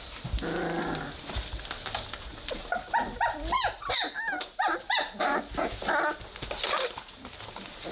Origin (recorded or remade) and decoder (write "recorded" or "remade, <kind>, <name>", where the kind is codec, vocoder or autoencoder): recorded